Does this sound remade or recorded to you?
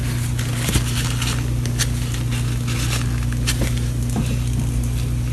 recorded